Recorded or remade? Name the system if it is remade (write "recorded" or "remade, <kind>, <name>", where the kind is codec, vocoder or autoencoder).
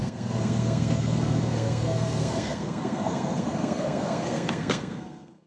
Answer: remade, codec, SNAC